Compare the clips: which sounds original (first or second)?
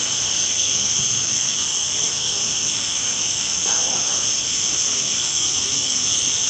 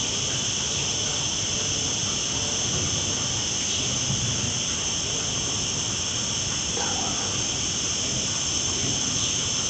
second